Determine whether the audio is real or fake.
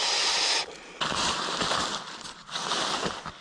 real